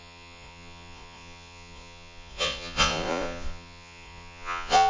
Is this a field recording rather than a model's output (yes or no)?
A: no